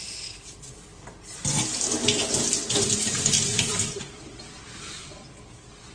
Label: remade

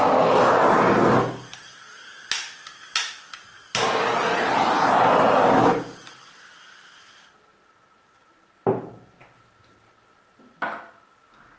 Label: recorded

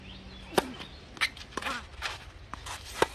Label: recorded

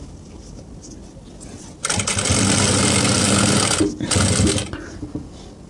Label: recorded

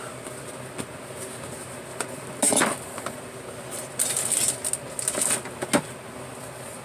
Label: recorded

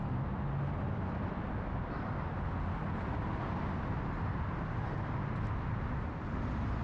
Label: recorded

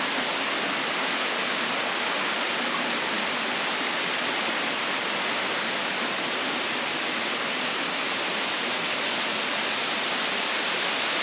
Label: recorded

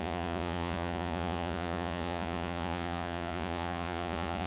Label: remade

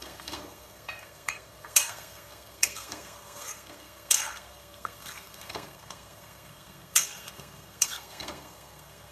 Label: remade